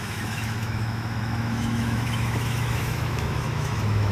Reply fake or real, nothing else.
fake